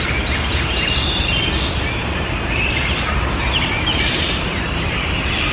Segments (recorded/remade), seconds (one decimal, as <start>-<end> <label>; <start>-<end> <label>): 0.0-5.5 recorded